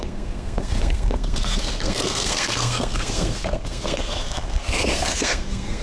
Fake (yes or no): yes